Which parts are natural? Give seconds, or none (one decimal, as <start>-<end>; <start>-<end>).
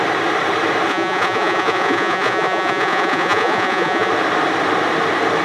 0.0-0.9; 4.1-5.4